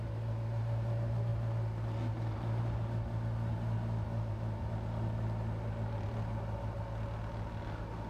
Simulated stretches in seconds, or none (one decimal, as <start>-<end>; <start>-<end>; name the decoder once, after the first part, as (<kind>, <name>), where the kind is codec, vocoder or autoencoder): none